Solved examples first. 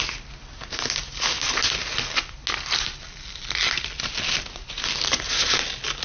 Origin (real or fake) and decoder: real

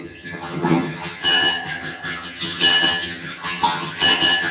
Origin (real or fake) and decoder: fake, vocoder, HiFi-GAN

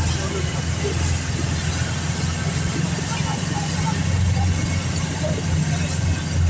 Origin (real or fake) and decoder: real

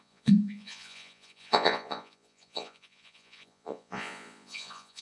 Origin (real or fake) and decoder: fake, vocoder, Vocos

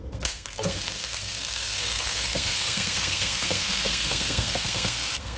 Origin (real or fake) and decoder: fake, codec, SNAC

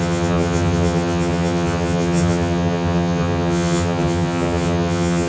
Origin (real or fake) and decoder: fake, vocoder, HiFi-GAN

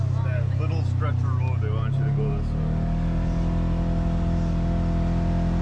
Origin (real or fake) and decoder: real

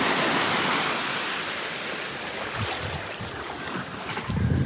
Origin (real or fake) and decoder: real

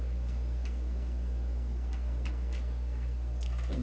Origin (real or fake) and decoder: fake, codec, SNAC